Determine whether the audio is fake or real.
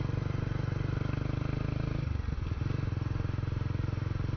real